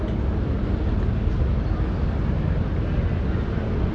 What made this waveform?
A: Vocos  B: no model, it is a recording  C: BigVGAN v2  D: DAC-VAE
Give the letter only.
B